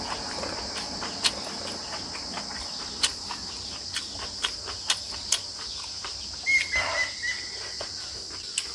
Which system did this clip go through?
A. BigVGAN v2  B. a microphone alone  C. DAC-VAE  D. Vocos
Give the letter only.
B